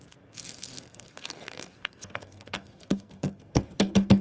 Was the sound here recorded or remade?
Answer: remade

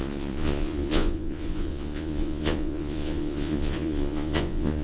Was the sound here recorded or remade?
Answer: remade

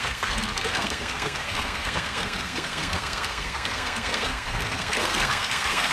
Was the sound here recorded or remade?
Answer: remade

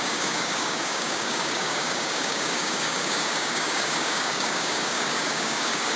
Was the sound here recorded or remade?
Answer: remade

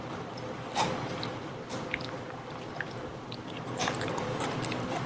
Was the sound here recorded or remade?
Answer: remade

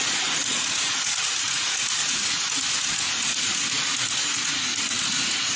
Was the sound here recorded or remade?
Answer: remade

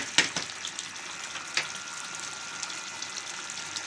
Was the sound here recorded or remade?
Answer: remade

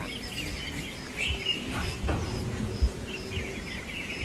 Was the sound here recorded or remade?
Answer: recorded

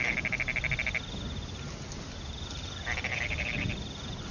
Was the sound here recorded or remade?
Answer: recorded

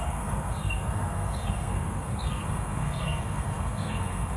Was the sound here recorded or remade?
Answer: remade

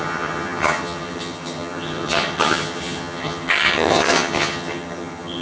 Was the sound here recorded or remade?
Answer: remade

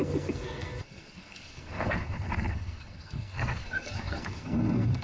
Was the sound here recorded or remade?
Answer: remade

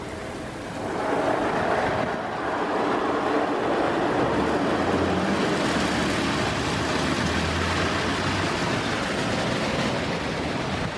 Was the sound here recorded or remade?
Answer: recorded